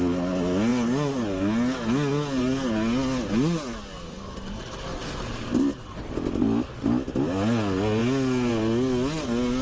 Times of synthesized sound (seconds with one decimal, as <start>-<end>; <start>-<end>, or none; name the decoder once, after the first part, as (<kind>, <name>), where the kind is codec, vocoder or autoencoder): none